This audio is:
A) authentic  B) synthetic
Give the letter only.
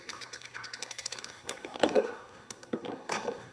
B